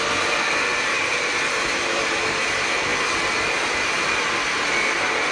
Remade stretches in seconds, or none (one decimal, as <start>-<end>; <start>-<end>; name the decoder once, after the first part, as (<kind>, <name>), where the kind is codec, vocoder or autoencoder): none